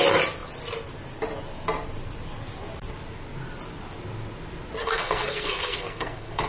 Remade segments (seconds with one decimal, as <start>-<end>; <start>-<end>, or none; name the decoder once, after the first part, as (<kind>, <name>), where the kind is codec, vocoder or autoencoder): 4.8-6.5 (codec, SNAC)